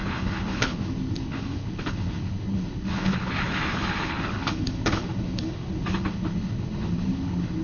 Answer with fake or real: fake